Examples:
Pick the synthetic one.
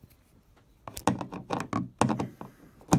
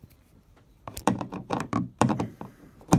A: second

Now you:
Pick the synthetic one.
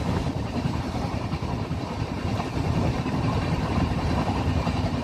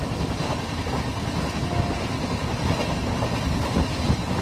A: first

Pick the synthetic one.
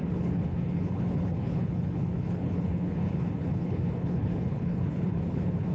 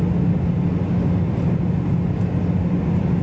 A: first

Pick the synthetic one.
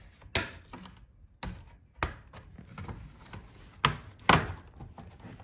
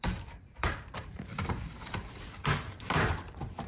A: second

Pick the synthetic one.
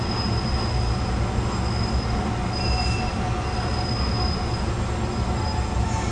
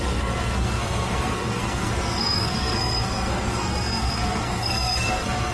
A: second